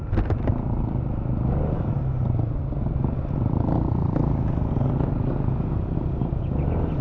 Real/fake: real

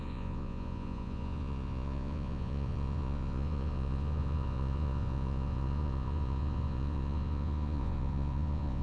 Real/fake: fake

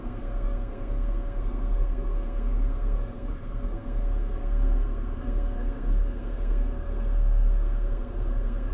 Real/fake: fake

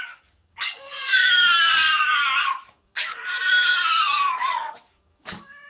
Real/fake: fake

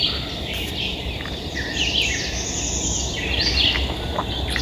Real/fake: real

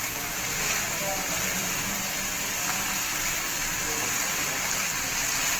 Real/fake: real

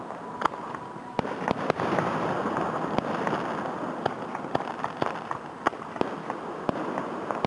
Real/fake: real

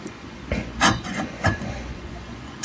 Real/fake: fake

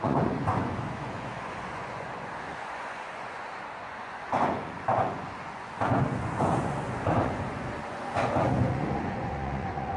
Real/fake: fake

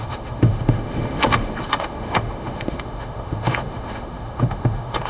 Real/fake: fake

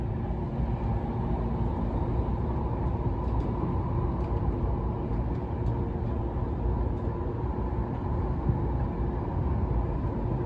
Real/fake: real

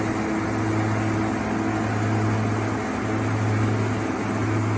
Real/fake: real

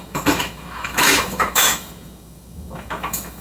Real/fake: fake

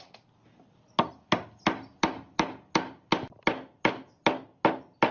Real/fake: real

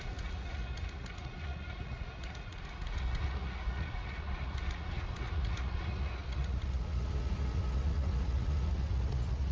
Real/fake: fake